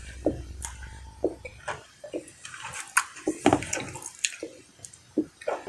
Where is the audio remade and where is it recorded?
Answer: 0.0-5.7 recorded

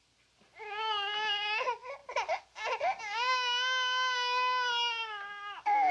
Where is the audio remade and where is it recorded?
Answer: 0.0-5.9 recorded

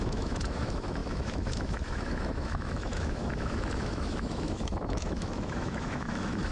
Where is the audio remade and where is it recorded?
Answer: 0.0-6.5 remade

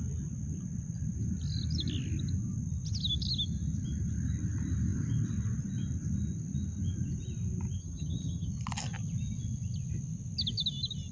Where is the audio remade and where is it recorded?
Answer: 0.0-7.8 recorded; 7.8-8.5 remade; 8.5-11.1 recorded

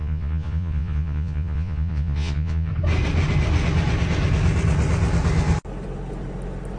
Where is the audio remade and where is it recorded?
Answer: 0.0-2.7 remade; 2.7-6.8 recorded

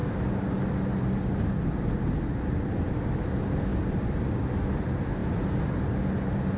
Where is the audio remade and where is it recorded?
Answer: 0.0-6.6 recorded

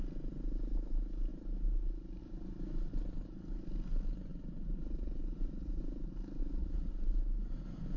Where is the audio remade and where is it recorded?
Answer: 0.0-4.3 recorded; 4.3-5.8 remade; 5.8-6.4 recorded; 6.4-6.9 remade; 6.9-8.0 recorded